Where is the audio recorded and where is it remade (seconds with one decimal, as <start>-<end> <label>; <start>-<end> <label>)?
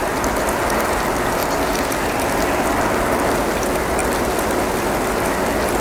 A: 0.0-5.8 recorded